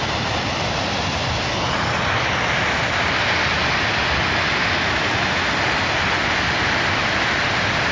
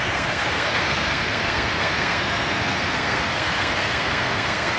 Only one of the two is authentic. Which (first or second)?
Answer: first